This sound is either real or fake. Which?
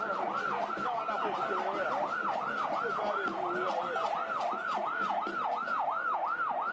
real